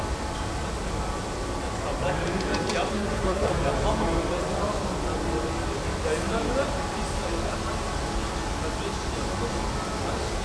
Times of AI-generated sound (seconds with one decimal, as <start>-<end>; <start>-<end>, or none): 2.9-3.5